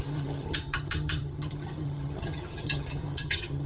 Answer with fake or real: fake